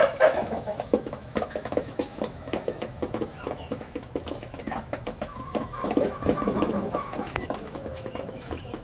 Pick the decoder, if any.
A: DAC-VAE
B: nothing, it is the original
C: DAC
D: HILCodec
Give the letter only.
A